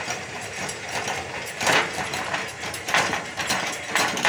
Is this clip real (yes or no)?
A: no